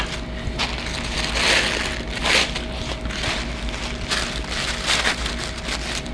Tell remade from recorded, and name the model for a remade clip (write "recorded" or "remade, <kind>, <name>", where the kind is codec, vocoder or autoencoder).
recorded